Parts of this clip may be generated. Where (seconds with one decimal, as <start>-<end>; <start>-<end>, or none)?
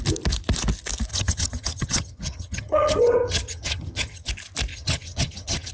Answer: 1.1-4.3; 4.7-5.7